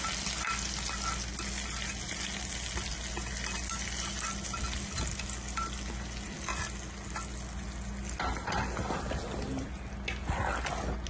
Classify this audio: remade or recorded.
recorded